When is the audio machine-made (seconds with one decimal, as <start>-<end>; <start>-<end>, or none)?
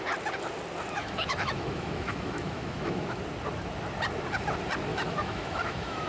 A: 1.0-3.2; 4.9-6.1